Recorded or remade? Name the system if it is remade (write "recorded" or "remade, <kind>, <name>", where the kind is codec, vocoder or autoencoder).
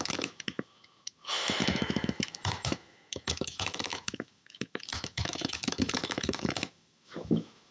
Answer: remade, autoencoder, DAC-VAE